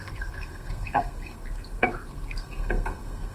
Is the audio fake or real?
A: fake